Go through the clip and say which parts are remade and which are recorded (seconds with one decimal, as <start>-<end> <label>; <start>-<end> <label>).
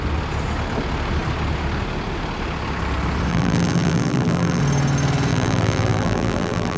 0.0-3.3 recorded; 3.3-4.6 remade; 4.6-5.3 recorded; 5.3-6.8 remade